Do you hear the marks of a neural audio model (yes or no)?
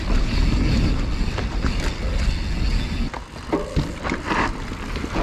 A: no